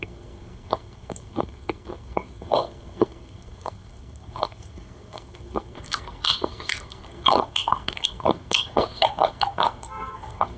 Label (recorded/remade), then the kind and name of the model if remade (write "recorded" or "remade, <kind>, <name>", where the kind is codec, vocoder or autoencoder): remade, codec, SNAC